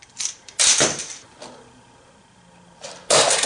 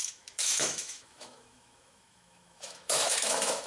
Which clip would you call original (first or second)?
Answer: first